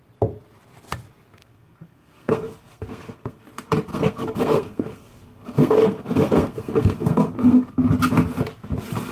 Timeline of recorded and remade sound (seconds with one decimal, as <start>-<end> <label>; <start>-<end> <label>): 0.0-1.4 recorded; 1.4-3.4 remade; 3.4-3.9 recorded; 3.9-7.9 remade; 7.9-9.1 recorded